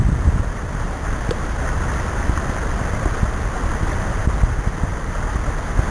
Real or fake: real